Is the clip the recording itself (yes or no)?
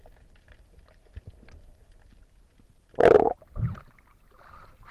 yes